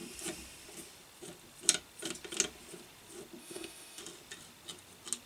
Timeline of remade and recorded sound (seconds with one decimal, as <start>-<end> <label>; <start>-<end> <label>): 0.0-3.4 recorded; 3.4-4.0 remade; 4.0-5.3 recorded